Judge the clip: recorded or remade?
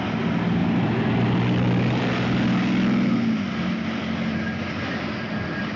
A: recorded